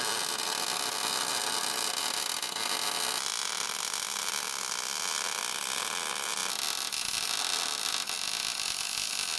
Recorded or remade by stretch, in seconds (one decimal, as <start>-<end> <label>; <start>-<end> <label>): 0.0-9.4 recorded